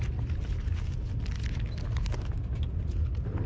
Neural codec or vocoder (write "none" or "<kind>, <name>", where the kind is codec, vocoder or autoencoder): none